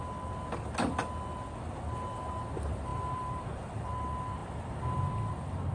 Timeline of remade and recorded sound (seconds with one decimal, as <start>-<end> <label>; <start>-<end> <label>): 0.0-2.9 recorded; 2.9-3.9 remade; 3.9-5.7 recorded